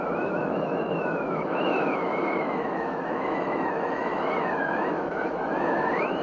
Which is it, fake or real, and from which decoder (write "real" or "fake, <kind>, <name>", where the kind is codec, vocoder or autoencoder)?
fake, autoencoder, DAC-VAE